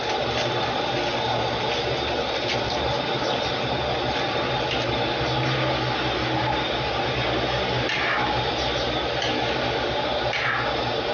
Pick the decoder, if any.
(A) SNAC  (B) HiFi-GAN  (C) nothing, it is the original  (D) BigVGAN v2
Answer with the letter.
C